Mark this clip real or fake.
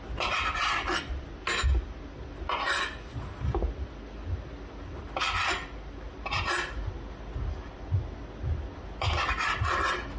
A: real